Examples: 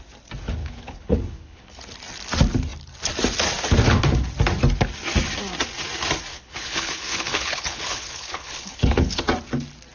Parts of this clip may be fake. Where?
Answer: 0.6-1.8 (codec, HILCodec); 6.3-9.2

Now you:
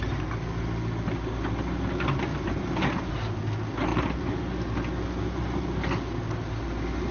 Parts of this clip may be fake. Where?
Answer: 2.3-3.1 (vocoder, BigVGAN v2); 3.9-4.5

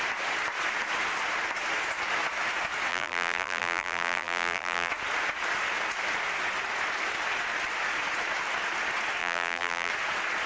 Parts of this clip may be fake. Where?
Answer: 2.9-4.9 (vocoder, BigVGAN v2); 9.2-9.9

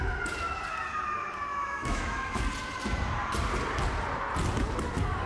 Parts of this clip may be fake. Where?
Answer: 1.5-2.4 (autoencoder, DAC-VAE)

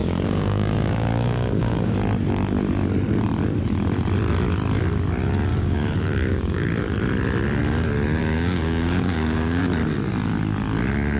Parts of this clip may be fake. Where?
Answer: 0.0-1.9 (codec, DAC); 5.5-6.7; 8.2-9.6